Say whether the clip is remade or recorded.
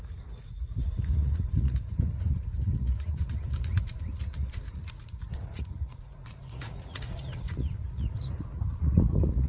remade